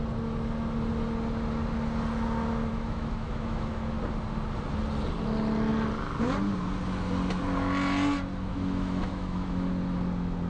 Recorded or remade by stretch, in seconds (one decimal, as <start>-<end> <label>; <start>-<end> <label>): 0.0-2.7 recorded; 2.7-3.9 remade; 3.9-8.5 recorded; 8.5-9.7 remade; 9.7-10.5 recorded